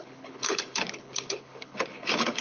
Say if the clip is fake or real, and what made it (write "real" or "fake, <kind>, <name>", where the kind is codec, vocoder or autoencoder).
fake, codec, HILCodec